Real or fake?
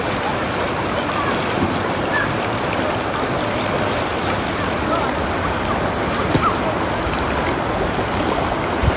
real